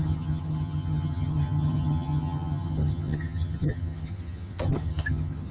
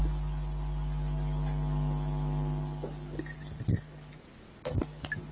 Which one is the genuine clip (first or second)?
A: second